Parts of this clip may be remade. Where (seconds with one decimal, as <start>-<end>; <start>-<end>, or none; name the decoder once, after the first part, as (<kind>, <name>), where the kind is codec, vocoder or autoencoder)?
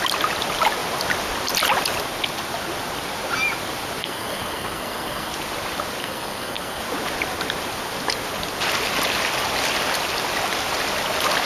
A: 4.0-5.3 (codec, SNAC); 6.0-6.8